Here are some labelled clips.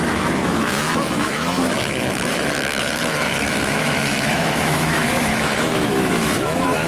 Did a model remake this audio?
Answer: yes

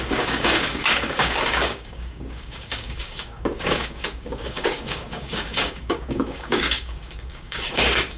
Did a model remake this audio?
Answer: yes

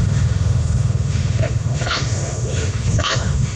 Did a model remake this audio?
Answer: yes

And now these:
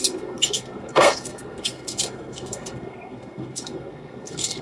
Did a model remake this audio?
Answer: yes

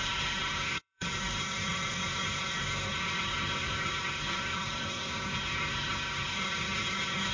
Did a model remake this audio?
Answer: yes